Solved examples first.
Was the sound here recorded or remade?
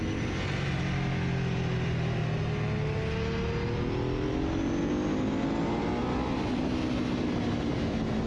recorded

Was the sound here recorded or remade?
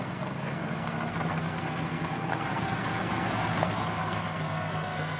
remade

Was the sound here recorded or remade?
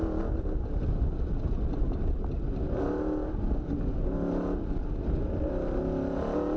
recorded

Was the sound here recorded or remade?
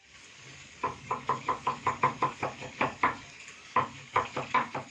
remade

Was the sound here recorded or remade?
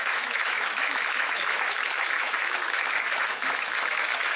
remade